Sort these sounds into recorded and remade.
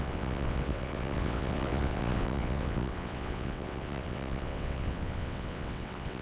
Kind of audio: remade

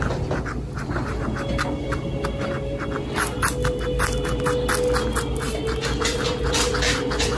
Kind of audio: recorded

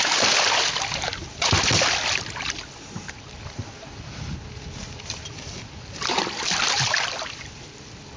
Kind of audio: recorded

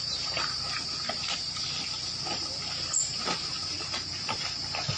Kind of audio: recorded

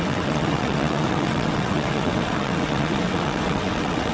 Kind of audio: remade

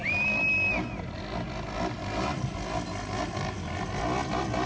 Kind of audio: recorded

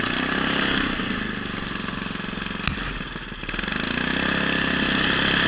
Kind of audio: recorded